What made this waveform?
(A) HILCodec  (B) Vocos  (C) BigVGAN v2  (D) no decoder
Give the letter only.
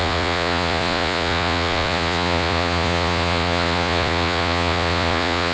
B